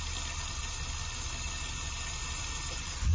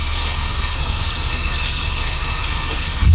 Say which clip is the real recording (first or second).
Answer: first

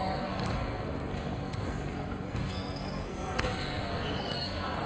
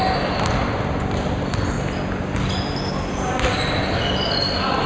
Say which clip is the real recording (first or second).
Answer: second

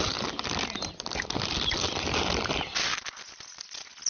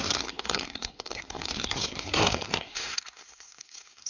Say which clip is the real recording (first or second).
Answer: first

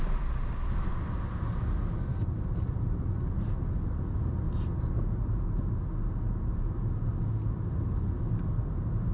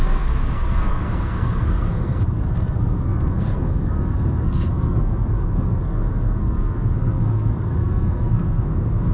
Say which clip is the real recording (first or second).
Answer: first